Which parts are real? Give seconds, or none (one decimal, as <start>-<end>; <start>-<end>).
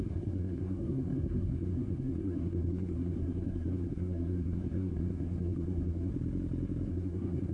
6.1-6.9